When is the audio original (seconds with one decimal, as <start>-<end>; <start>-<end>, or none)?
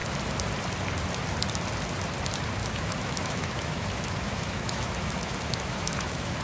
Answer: 0.0-2.6